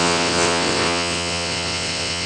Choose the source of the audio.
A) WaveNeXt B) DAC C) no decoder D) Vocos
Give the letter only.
A